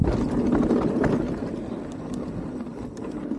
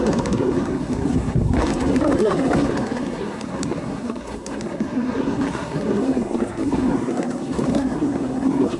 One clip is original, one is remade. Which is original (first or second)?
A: first